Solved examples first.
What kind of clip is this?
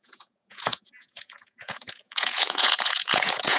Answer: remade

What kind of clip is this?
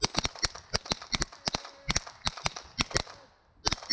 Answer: recorded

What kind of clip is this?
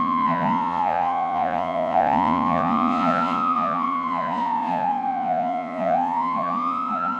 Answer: remade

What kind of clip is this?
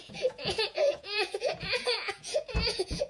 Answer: remade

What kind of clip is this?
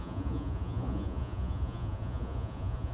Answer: remade